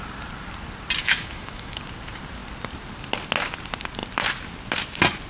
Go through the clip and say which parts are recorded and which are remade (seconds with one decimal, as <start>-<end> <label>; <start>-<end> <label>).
0.0-1.0 recorded; 1.0-1.8 remade; 1.8-5.3 recorded